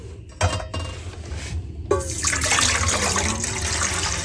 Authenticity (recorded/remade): recorded